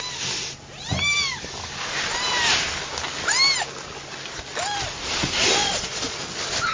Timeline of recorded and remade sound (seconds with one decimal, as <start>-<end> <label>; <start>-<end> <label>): 0.0-5.6 recorded; 5.6-6.2 remade; 6.2-6.7 recorded